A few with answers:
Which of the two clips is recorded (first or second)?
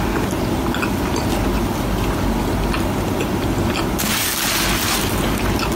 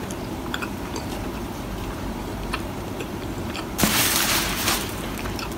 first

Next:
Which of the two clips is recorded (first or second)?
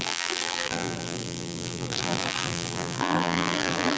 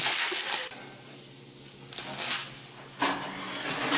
second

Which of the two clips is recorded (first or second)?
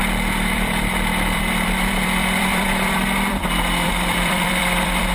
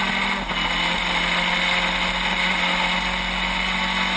second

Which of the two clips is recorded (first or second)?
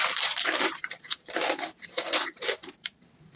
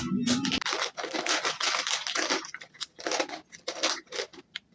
second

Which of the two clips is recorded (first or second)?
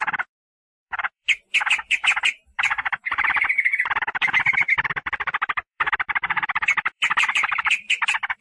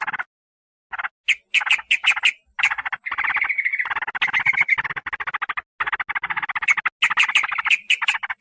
second